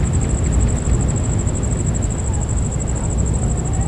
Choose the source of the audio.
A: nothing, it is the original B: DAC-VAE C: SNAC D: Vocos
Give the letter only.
A